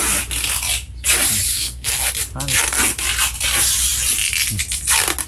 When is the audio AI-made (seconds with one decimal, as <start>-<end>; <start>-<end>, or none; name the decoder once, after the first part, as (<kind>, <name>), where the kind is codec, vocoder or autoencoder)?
1.5-2.1 (codec, SNAC)